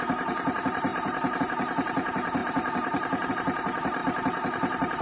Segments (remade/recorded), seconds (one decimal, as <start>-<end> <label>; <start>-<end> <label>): 0.0-5.0 remade